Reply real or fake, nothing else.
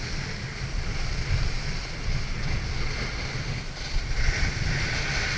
real